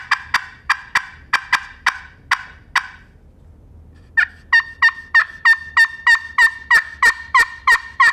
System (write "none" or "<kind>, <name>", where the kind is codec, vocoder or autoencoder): none